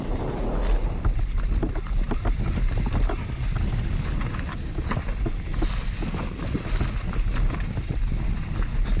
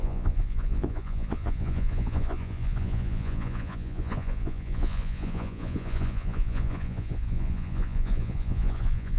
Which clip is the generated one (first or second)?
second